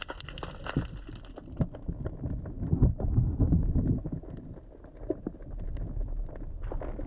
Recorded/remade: recorded